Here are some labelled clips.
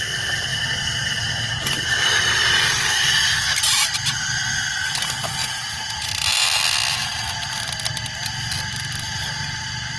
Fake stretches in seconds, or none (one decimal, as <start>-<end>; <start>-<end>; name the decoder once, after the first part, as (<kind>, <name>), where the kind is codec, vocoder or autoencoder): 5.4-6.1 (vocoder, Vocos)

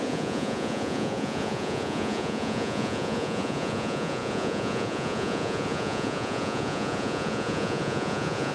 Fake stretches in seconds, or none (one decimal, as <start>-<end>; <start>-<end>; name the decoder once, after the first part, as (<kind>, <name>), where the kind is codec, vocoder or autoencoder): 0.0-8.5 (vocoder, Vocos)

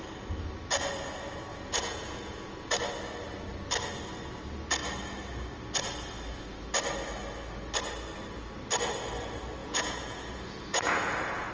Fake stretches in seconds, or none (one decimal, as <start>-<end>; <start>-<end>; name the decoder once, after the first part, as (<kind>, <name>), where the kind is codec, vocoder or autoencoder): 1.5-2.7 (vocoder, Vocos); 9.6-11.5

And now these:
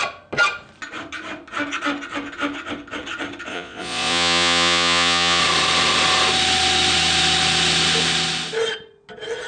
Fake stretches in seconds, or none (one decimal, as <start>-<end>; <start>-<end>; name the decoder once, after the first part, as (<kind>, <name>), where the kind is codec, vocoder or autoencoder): 3.5-5.4 (vocoder, Vocos)

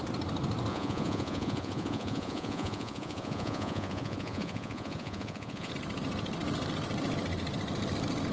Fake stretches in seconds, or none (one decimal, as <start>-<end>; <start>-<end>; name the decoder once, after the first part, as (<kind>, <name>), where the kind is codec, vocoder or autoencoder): 0.7-5.7 (vocoder, Vocos)

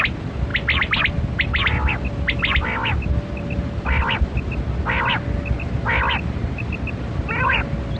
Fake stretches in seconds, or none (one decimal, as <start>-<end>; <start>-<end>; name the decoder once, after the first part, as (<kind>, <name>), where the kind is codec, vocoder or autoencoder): none

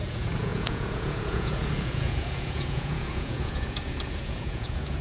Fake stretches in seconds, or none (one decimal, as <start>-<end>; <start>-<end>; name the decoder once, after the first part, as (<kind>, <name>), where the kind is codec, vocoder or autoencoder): 0.0-5.0 (vocoder, Vocos)

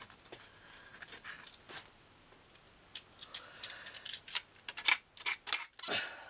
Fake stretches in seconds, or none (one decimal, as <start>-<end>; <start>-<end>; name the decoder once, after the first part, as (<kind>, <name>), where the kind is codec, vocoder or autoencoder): none